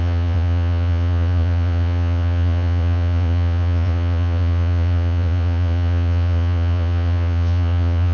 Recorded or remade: remade